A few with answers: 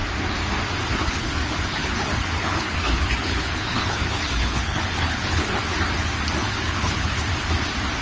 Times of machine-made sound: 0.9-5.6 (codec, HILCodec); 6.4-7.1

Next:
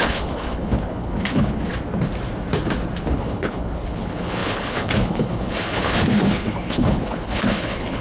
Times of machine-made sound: 0.0-1.7 (codec, HILCodec); 3.0-8.0

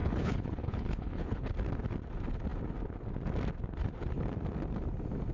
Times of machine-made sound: 0.0-1.5 (codec, HILCodec)

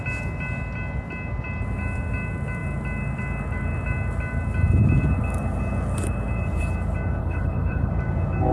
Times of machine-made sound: 7.2-7.9 (codec, HILCodec)